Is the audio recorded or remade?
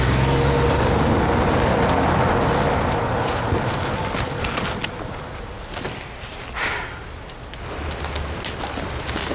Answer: recorded